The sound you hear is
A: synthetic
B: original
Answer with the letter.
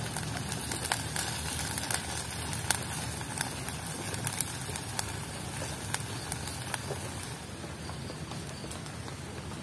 B